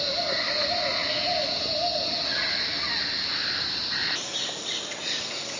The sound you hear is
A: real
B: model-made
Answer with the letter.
A